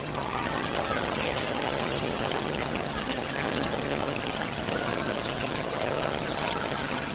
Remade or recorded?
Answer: remade